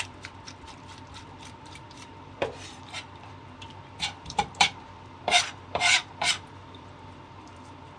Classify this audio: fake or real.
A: fake